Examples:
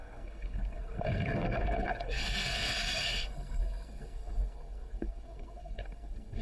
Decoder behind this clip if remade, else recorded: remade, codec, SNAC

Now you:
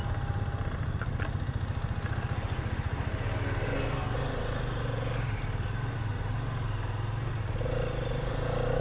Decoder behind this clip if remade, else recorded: recorded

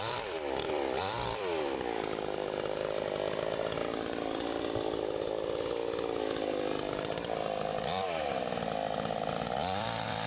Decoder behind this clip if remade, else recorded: remade, vocoder, BigVGAN v2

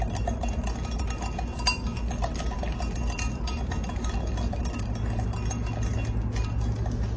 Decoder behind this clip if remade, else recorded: recorded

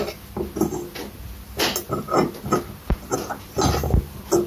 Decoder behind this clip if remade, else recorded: recorded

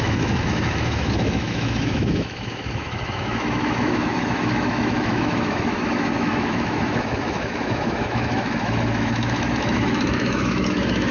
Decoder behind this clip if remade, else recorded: remade, autoencoder, DAC-VAE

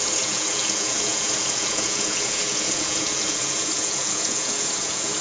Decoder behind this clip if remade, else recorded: remade, vocoder, Vocos